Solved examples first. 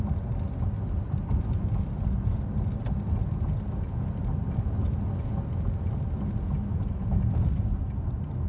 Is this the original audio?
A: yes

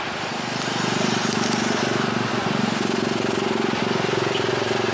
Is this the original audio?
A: yes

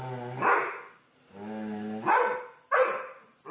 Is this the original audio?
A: yes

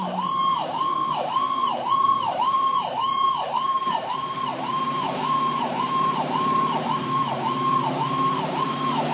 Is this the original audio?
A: no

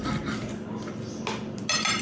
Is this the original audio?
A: yes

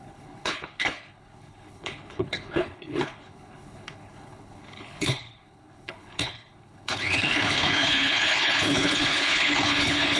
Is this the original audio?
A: no